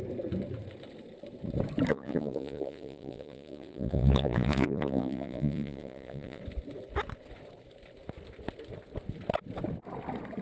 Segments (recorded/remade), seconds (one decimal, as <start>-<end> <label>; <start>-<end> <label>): 0.0-1.9 recorded; 1.9-6.4 remade; 6.4-10.4 recorded